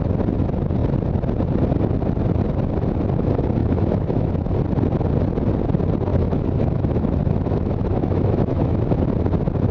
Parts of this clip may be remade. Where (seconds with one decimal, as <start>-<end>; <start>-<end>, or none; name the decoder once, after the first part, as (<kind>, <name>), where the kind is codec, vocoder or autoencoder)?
3.6-4.5 (autoencoder, DAC-VAE); 6.1-8.8